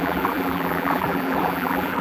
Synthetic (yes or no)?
yes